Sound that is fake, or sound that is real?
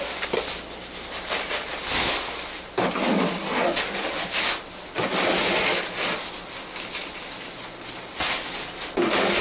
real